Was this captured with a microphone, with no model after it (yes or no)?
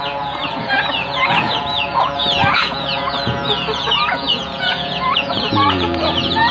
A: no